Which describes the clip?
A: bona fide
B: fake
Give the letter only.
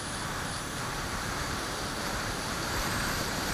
B